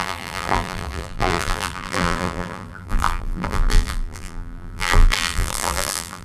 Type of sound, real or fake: fake